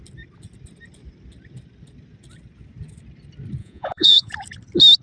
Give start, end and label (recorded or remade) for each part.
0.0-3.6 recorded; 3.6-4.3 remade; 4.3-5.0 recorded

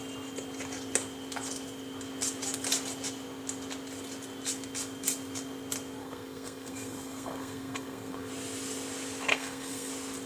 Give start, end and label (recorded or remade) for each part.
0.0-6.0 recorded; 6.0-8.3 remade; 8.3-9.3 recorded; 9.3-9.9 remade; 9.9-10.3 recorded